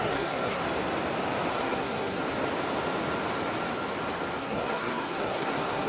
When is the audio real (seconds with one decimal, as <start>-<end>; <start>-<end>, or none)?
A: 0.6-1.5; 2.2-4.4